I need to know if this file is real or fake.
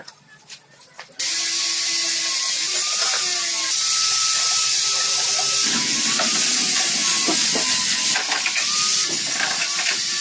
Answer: real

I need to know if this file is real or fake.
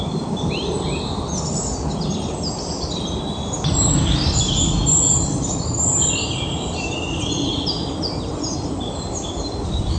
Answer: real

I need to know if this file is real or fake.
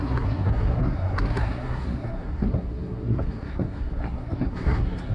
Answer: fake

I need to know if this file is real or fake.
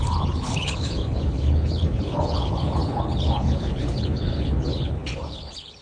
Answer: fake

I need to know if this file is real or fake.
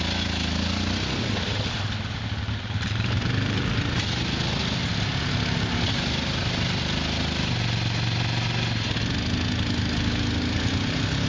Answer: real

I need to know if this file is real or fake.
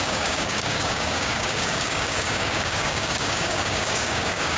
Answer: fake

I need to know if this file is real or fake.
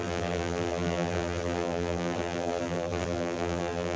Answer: fake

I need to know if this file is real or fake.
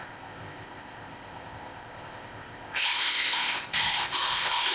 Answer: fake